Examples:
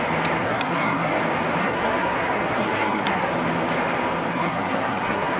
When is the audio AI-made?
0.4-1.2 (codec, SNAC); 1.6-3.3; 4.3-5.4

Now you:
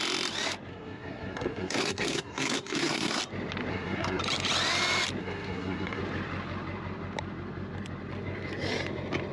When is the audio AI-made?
0.7-3.2 (codec, SNAC); 3.7-4.2; 5.2-6.0